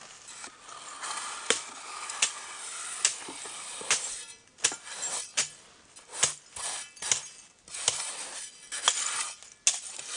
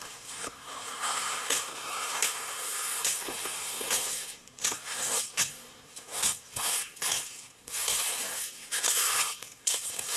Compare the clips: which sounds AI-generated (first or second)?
second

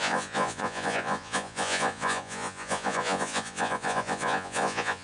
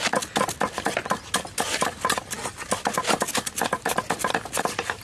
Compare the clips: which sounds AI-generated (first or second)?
first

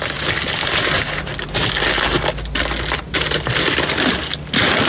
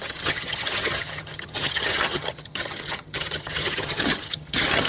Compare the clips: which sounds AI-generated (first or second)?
second